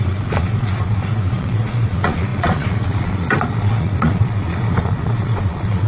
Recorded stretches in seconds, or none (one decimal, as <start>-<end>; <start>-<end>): none